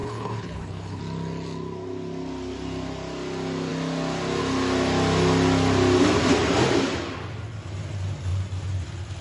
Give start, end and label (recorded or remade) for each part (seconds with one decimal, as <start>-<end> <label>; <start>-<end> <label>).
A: 0.0-1.0 remade; 1.0-9.2 recorded